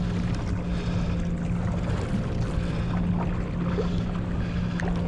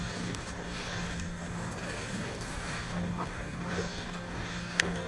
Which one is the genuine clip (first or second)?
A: first